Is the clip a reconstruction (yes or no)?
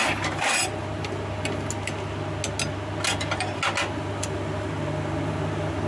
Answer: no